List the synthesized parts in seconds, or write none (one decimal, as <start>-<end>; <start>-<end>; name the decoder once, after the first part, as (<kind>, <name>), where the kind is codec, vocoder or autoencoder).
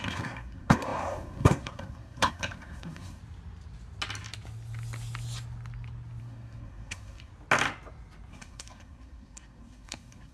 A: 0.0-3.2 (codec, SNAC); 6.2-7.3; 8.3-10.3